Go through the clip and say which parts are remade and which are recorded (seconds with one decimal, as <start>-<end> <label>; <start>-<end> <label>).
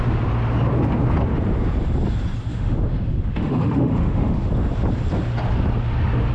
0.0-2.5 recorded; 2.5-4.5 remade; 4.5-6.3 recorded